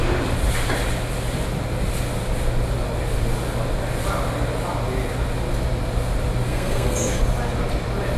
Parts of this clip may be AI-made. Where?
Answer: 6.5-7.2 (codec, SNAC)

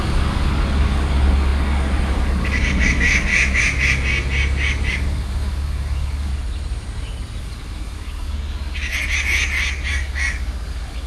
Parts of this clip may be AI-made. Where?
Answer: 0.0-3.3 (codec, DAC); 4.9-6.3; 7.4-8.9; 9.9-11.1